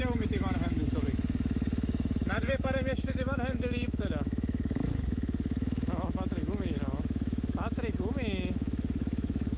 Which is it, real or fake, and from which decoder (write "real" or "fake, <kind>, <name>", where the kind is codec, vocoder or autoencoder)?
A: fake, autoencoder, DAC-VAE